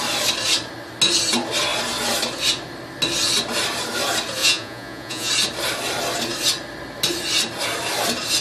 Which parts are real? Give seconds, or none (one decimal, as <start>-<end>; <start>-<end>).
0.0-4.4; 5.3-8.4